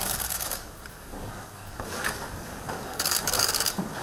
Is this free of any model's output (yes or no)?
no